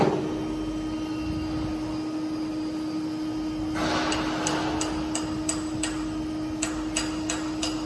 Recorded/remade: recorded